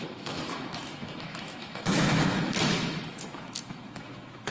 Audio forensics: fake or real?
fake